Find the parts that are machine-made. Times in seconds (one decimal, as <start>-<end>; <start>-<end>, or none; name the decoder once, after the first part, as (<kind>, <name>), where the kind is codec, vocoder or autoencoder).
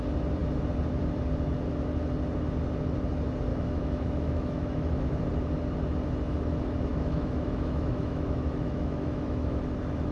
3.5-5.0 (autoencoder, DAC-VAE); 6.9-9.6